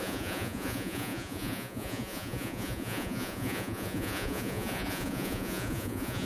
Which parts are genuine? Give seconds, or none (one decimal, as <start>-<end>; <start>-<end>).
none